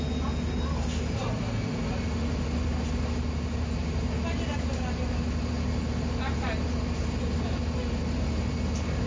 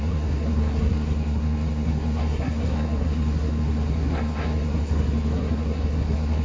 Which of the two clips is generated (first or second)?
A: second